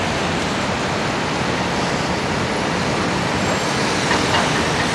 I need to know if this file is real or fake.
real